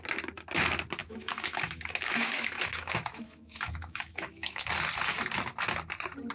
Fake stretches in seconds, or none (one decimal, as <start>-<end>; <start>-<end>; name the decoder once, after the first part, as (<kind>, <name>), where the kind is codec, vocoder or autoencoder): 1.0-4.6 (autoencoder, DAC-VAE)